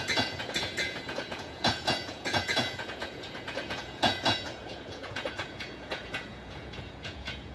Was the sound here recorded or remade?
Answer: remade